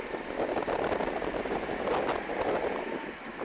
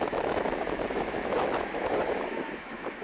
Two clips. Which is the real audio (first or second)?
first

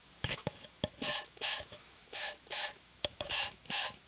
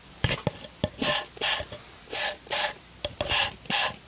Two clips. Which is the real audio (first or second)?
second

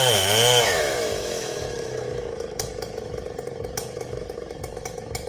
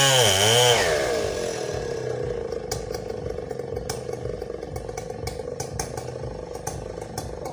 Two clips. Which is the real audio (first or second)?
second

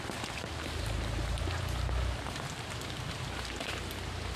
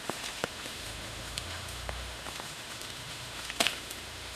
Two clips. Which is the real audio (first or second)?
first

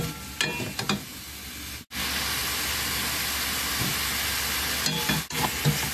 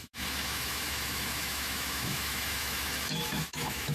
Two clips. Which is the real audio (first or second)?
first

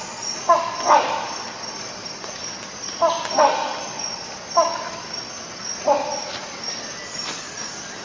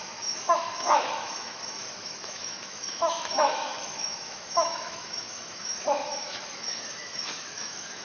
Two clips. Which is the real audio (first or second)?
first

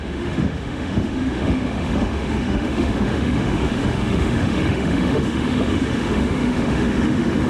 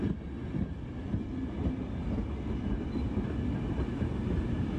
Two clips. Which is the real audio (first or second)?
second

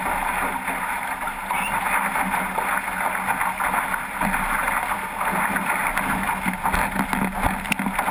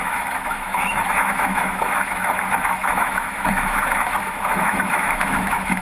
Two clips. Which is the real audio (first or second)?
first